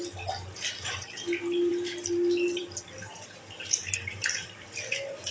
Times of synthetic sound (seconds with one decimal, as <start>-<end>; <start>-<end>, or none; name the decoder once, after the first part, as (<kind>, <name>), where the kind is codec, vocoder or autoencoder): none